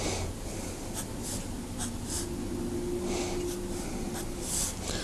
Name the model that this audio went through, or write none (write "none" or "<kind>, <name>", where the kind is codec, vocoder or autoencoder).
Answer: none